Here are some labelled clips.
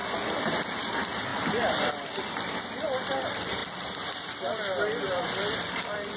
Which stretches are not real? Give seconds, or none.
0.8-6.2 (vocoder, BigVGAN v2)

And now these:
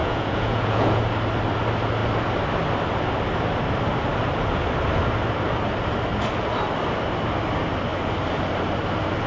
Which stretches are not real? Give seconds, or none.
0.0-1.0 (vocoder, Vocos)

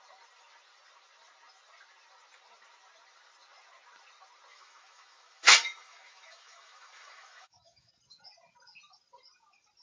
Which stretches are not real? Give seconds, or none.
4.5-7.9 (autoencoder, DAC-VAE)

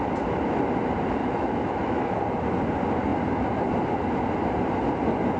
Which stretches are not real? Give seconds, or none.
1.2-2.2 (autoencoder, DAC-VAE)

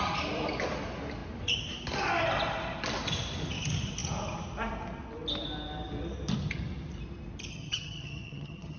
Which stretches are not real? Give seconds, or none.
7.5-8.8 (vocoder, HiFi-GAN)

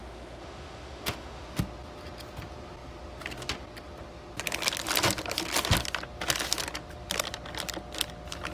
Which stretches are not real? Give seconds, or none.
0.0-1.6 (autoencoder, DAC-VAE)

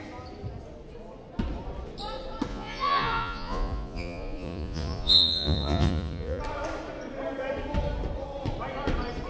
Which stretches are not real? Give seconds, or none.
2.5-6.4 (vocoder, Vocos)

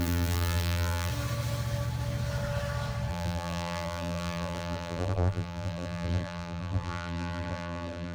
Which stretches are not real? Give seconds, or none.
0.0-1.1 (vocoder, BigVGAN v2); 3.1-8.1